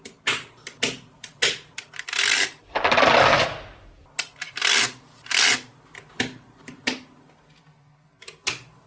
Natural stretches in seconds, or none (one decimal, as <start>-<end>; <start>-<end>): none